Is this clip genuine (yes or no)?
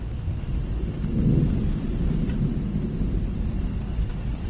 yes